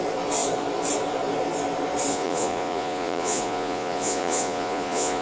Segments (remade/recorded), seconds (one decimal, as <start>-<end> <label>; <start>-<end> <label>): 0.0-2.1 recorded; 2.1-5.2 remade